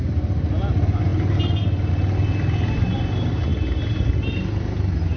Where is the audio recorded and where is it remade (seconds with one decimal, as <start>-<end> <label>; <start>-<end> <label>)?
0.0-5.2 recorded